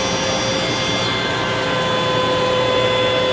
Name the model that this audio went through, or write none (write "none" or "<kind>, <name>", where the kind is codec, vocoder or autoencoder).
none